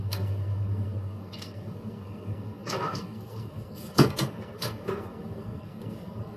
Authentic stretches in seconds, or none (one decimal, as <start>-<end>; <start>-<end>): none